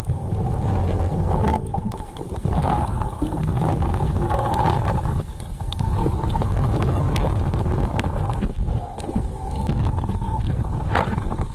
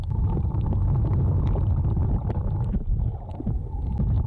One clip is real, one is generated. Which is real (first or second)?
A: second